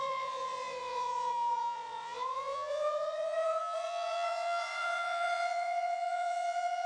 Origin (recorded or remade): remade